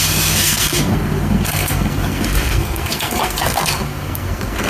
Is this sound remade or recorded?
remade